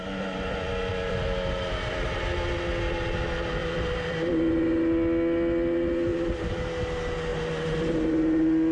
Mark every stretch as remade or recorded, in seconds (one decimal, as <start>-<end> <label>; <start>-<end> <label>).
0.0-3.6 recorded; 3.6-4.3 remade; 4.3-8.7 recorded